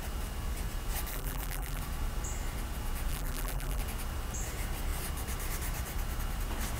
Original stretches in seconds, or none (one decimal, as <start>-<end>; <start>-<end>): 0.0-1.1; 1.8-3.1; 3.8-6.8